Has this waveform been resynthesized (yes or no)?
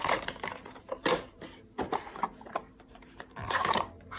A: yes